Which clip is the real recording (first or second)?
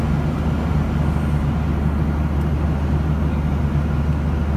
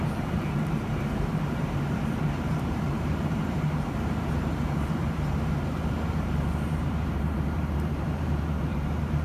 first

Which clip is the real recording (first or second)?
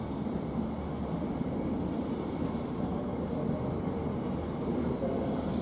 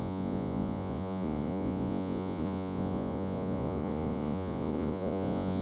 first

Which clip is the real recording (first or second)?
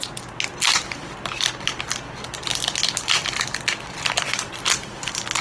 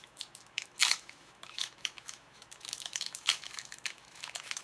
first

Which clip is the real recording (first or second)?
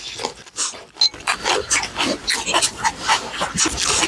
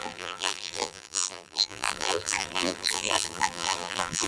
first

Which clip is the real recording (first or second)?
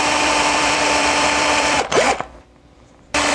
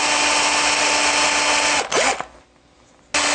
second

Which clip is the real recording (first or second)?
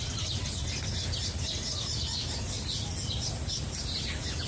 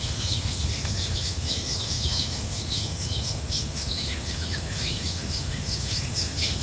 first